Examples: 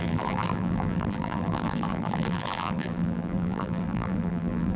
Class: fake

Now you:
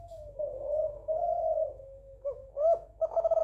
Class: fake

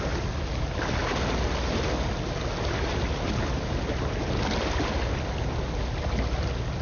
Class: real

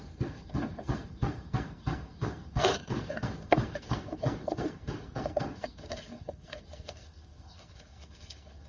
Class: fake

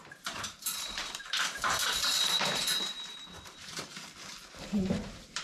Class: fake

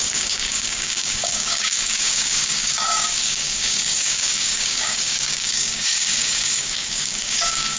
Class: fake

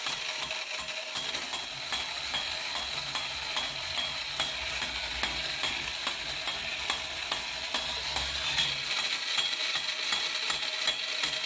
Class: real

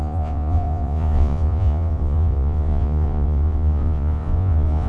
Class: fake